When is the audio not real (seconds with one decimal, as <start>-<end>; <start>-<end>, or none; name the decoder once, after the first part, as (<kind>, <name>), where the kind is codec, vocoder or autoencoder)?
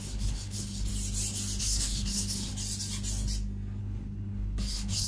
0.0-0.9 (codec, HILCodec); 1.6-2.5; 3.8-5.1